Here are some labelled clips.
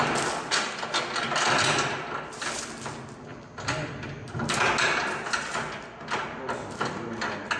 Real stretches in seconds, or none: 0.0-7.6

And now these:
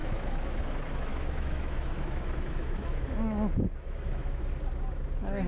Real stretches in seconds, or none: 0.6-1.1; 4.4-5.5

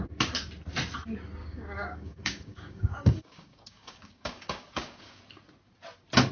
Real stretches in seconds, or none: 0.0-1.4; 5.2-6.3

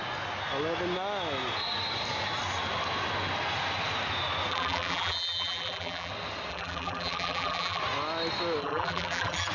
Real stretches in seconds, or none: 0.0-4.5; 6.1-6.5; 7.8-8.6

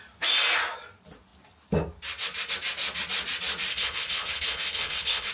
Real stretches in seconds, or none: 0.0-3.7